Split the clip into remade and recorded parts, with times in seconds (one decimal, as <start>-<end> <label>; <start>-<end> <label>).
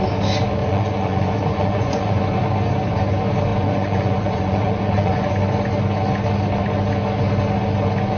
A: 0.0-0.6 recorded; 0.6-2.2 remade; 2.2-3.5 recorded; 3.5-5.3 remade; 5.3-8.2 recorded